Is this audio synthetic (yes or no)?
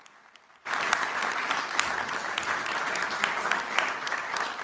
no